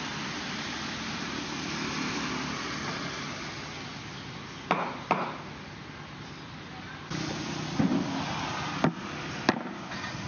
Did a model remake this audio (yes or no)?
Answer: no